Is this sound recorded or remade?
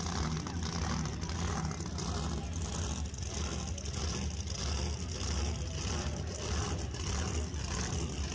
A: recorded